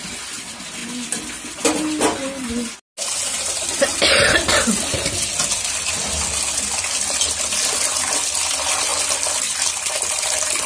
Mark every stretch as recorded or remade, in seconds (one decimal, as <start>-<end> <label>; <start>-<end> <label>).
0.0-10.7 recorded